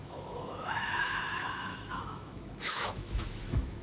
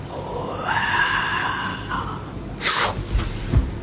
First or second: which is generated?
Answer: first